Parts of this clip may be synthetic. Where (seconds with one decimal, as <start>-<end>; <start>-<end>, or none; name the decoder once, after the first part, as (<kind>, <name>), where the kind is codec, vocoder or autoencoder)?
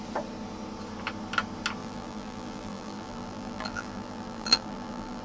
1.8-5.2 (vocoder, BigVGAN v2)